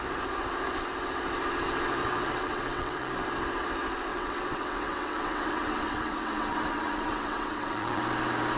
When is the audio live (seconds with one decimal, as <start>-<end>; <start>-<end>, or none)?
0.0-2.0; 3.1-4.1; 8.0-8.6